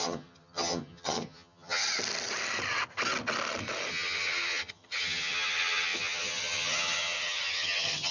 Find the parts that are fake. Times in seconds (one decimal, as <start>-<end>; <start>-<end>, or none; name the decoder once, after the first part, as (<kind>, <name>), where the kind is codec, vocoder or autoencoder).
0.0-1.8 (vocoder, HiFi-GAN); 3.9-8.1